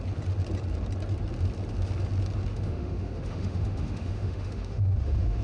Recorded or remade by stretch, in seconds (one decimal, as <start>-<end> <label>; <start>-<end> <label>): 0.0-2.5 recorded; 2.5-5.4 remade